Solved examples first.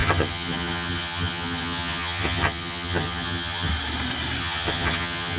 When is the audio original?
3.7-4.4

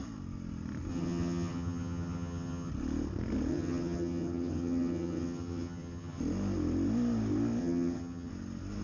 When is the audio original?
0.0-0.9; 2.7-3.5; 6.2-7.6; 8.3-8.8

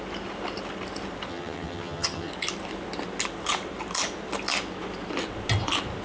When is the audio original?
0.0-1.3; 2.3-6.0

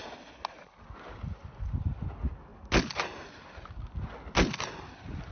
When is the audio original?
0.0-5.3

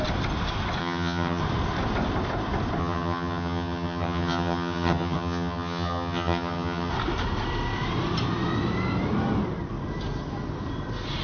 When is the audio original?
0.0-0.8; 1.4-2.8; 6.9-11.2

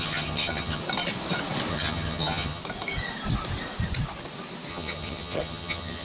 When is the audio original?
0.8-1.7; 2.6-4.7

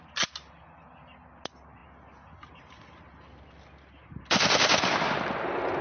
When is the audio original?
0.0-5.8